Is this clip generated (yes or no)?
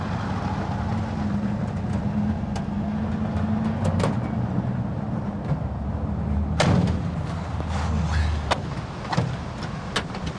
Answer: no